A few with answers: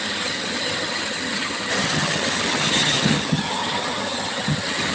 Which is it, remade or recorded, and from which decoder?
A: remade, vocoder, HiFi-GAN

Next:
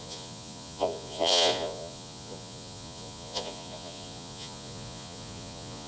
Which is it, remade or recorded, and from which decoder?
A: remade, vocoder, Vocos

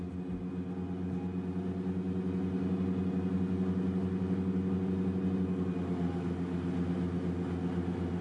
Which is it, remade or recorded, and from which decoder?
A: recorded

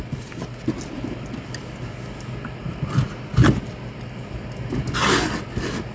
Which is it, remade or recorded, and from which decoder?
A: recorded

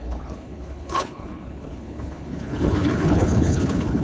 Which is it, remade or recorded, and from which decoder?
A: remade, codec, HILCodec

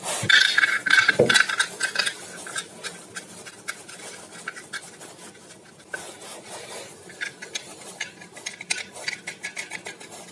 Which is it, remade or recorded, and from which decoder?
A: recorded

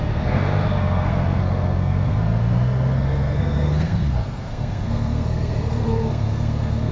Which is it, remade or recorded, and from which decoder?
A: remade, codec, SNAC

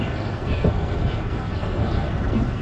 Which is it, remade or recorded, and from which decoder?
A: remade, codec, SNAC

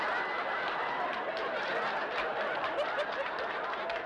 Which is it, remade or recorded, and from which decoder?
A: recorded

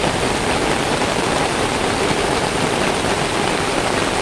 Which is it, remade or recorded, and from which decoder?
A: recorded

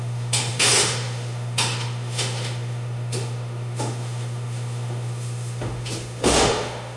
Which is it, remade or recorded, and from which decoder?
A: remade, autoencoder, DAC-VAE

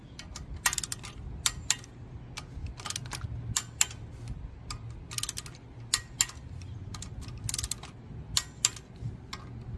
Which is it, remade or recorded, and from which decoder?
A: recorded